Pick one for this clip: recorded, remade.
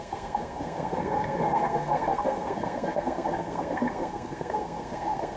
remade